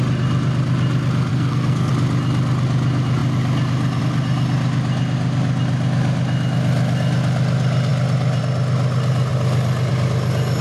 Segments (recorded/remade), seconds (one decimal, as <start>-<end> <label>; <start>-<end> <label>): 0.0-1.3 recorded; 1.3-1.9 remade; 1.9-10.6 recorded